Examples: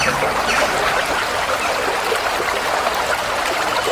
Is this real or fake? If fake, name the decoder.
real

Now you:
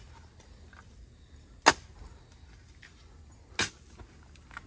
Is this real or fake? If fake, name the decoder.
real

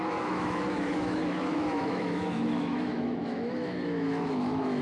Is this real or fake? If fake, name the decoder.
fake, autoencoder, DAC-VAE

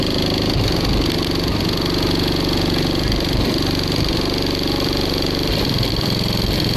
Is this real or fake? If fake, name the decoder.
real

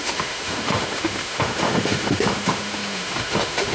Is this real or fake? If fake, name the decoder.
fake, autoencoder, DAC-VAE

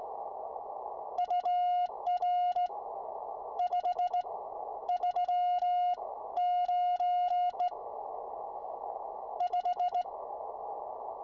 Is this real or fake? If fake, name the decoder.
fake, autoencoder, DAC-VAE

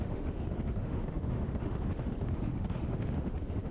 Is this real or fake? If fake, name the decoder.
fake, autoencoder, DAC-VAE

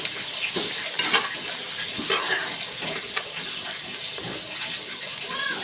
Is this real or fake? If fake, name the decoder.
real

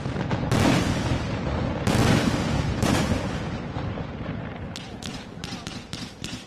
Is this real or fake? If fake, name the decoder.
real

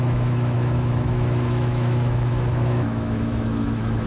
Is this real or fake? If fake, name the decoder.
fake, autoencoder, DAC-VAE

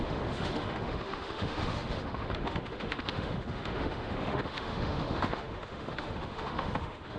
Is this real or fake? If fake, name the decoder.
fake, autoencoder, DAC-VAE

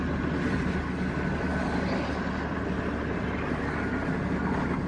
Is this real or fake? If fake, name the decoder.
real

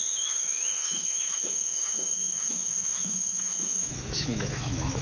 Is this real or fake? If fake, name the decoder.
fake, autoencoder, DAC-VAE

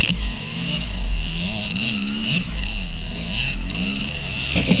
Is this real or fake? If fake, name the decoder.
fake, autoencoder, DAC-VAE